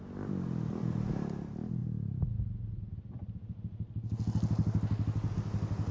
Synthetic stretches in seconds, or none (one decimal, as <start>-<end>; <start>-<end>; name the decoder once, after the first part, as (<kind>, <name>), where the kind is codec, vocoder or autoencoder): none